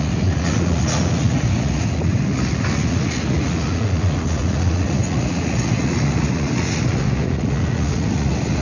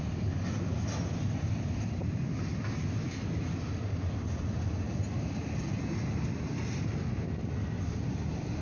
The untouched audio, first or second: second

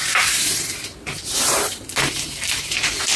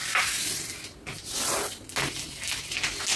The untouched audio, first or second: second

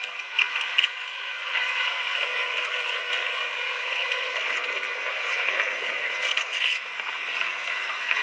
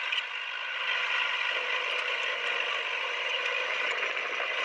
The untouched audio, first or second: second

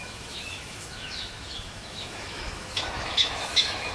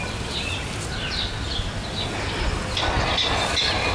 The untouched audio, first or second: second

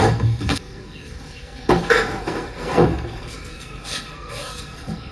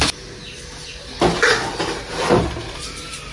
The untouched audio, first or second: second